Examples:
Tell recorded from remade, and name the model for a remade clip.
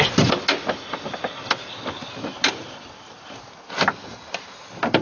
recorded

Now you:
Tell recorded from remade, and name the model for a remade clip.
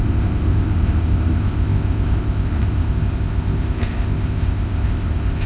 remade, codec, ZipCodec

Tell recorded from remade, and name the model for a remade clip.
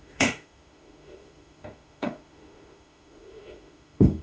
remade, autoencoder, DAC-VAE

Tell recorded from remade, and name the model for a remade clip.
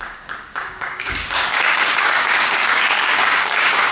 remade, codec, DAC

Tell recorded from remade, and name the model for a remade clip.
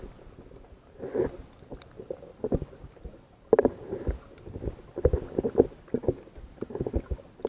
recorded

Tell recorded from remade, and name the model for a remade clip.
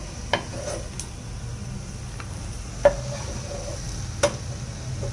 recorded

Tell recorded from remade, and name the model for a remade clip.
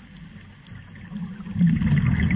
recorded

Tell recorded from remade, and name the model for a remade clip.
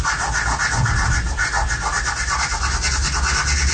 recorded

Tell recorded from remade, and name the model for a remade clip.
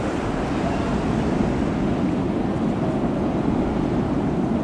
recorded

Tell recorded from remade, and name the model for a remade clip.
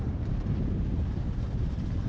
remade, vocoder, BigVGAN v2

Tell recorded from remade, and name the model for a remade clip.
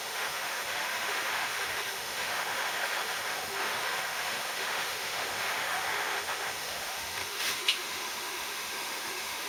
remade, autoencoder, DAC-VAE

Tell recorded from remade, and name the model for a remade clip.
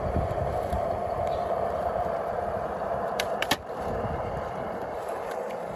remade, vocoder, BigVGAN v2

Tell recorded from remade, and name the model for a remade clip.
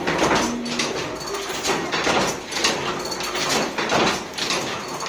recorded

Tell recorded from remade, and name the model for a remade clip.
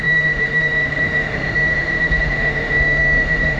remade, autoencoder, DAC-VAE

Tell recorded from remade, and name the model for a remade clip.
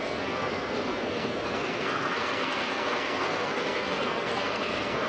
remade, codec, SNAC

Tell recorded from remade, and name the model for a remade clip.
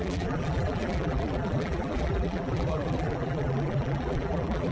remade, vocoder, BigVGAN v2